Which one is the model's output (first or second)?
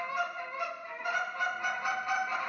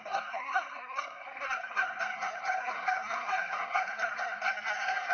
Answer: second